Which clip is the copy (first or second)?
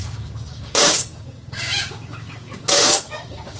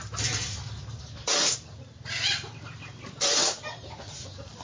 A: first